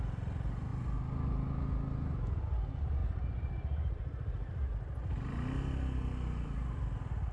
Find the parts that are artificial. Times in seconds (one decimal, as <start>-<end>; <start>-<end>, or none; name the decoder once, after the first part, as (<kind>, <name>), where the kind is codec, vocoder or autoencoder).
3.0-4.7 (vocoder, BigVGAN v2)